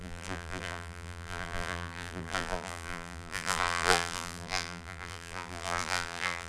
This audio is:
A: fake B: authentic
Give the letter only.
A